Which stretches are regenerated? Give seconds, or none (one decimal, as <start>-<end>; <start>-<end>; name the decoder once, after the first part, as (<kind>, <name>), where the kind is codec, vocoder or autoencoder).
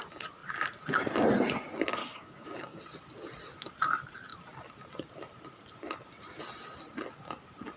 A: 2.0-2.8 (codec, DAC)